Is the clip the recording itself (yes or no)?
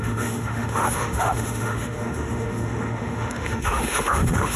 no